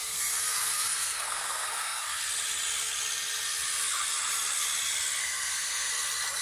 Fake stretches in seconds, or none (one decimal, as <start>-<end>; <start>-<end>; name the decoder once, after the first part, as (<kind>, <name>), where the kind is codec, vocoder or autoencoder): 0.0-2.2 (codec, SNAC); 5.2-5.9